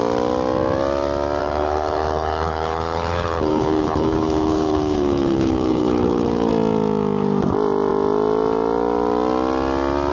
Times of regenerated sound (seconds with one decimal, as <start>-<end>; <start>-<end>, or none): 1.4-6.5